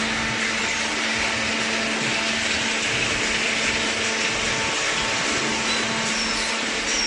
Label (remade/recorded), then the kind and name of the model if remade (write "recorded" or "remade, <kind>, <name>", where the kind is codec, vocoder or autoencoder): recorded